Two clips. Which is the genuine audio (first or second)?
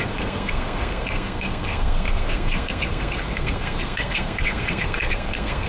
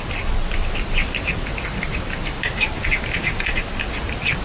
second